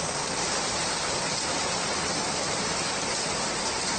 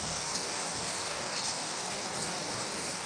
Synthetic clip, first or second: second